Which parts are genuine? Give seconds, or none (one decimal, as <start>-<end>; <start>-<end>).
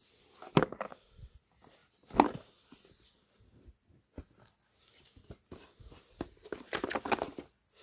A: 0.0-0.9; 1.4-7.8